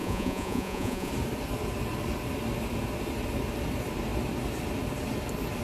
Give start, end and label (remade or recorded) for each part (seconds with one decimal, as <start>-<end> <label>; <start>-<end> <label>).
0.0-1.1 remade; 1.1-5.6 recorded